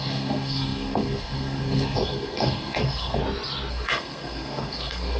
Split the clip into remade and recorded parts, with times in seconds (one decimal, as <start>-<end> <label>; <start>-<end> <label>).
0.0-3.2 remade; 3.2-3.7 recorded; 3.7-5.2 remade